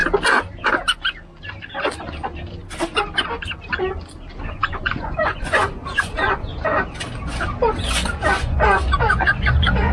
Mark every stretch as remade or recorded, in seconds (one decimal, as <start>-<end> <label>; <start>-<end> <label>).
0.0-4.5 recorded; 4.5-6.7 remade; 6.7-7.9 recorded; 7.9-9.9 remade